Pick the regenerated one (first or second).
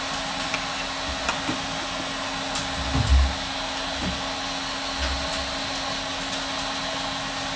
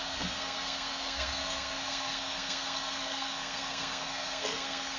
second